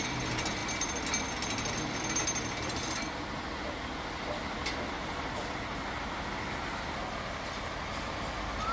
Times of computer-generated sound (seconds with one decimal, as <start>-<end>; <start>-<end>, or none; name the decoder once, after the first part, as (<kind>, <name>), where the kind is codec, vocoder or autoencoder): none